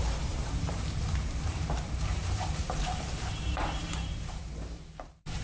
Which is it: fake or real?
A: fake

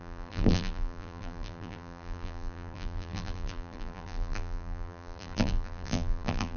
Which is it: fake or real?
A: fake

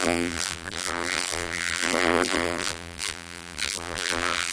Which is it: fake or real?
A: fake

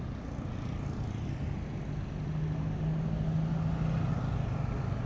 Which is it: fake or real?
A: real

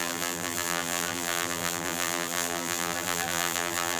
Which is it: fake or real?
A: fake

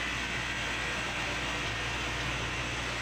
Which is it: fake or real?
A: real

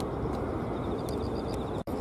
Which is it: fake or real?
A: real